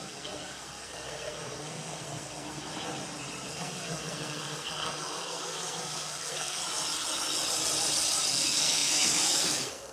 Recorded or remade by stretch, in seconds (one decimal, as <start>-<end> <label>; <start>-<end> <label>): 0.0-2.7 remade; 2.7-3.5 recorded; 3.5-6.6 remade; 6.6-8.3 recorded; 8.3-9.9 remade